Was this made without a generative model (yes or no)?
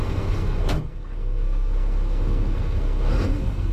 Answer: no